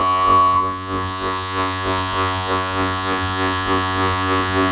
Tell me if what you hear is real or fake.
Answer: fake